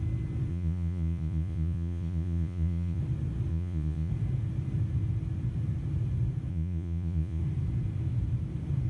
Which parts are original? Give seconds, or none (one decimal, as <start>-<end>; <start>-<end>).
0.0-0.5; 3.0-3.5; 4.1-6.5; 7.4-8.9